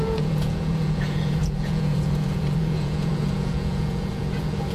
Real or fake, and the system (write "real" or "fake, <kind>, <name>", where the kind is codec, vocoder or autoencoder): fake, vocoder, Vocos